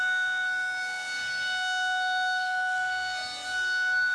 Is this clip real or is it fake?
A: fake